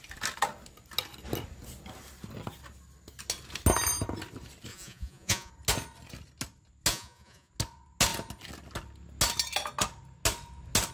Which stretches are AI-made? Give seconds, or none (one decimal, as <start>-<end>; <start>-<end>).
4.7-5.5; 6.9-7.5